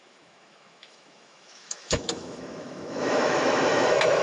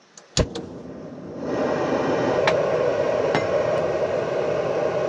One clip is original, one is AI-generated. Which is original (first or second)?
second